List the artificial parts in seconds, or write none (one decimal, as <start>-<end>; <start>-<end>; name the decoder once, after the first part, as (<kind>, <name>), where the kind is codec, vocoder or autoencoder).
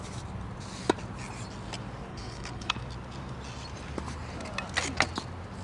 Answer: 2.1-2.7 (codec, HILCodec)